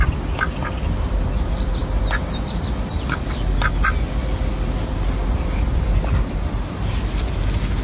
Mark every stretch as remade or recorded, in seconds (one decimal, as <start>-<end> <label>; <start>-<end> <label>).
0.0-7.8 recorded